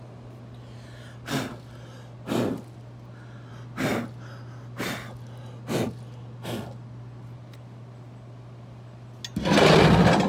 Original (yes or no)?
yes